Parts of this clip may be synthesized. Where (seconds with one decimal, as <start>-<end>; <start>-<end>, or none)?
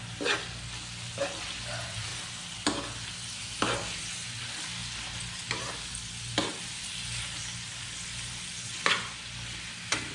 none